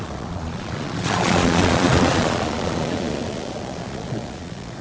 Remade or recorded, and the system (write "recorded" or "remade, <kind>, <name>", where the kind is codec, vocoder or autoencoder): remade, vocoder, Vocos